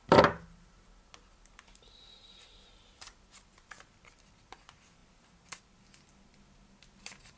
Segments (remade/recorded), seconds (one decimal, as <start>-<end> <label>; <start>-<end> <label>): 0.0-7.4 recorded